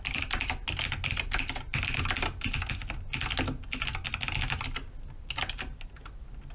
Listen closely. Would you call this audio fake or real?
real